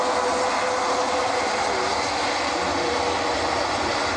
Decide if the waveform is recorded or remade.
recorded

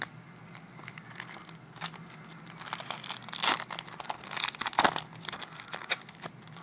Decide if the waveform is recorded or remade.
recorded